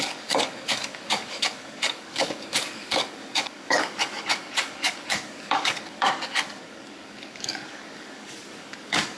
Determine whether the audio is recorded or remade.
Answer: remade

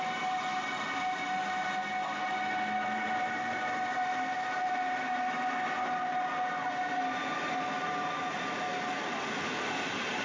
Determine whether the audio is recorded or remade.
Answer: recorded